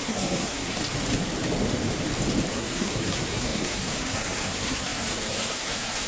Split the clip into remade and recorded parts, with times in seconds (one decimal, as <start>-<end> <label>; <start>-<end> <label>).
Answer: 0.0-0.8 remade; 0.8-2.5 recorded; 2.5-6.1 remade